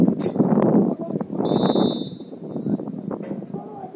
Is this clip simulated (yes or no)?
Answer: no